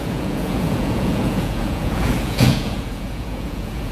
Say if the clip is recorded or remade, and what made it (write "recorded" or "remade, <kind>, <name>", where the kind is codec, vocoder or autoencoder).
remade, vocoder, Vocos